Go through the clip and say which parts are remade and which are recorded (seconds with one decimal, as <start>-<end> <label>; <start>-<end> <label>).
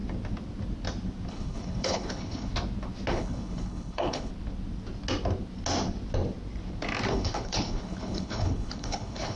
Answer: 0.0-1.3 recorded; 1.3-2.5 remade; 2.5-3.1 recorded; 3.1-4.3 remade; 4.3-7.1 recorded; 7.1-9.4 remade